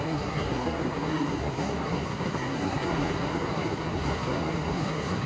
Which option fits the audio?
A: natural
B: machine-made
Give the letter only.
B